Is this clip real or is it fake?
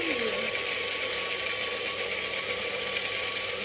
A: real